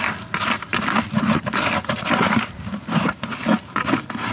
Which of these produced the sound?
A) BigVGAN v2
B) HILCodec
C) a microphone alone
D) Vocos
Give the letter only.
C